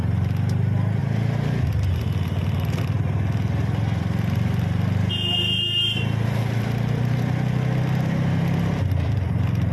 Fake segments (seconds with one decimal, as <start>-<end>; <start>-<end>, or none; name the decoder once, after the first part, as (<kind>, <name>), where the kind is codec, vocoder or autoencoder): none